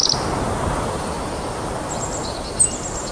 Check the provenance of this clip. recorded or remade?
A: recorded